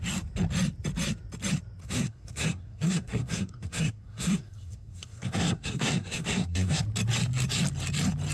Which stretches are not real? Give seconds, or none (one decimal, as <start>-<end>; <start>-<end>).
1.8-6.8